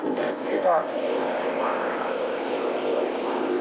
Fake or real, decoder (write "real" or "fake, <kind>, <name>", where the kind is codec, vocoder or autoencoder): fake, codec, ZipCodec